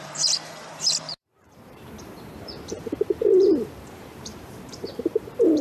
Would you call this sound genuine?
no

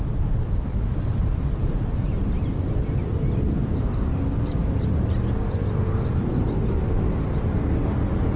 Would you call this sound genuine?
yes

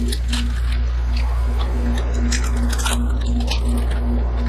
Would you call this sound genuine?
yes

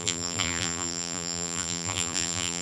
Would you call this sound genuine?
no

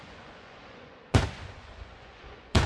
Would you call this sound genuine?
no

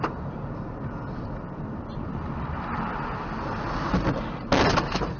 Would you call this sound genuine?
yes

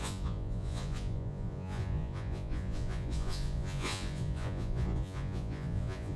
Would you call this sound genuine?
no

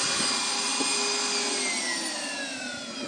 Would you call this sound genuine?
yes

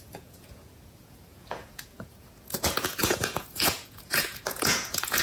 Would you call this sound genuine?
no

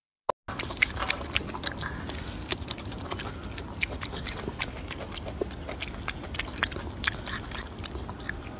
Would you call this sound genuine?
yes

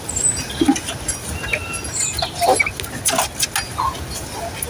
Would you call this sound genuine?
yes